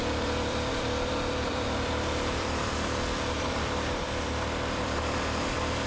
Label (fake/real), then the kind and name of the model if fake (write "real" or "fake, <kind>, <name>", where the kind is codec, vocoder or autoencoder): fake, vocoder, BigVGAN v2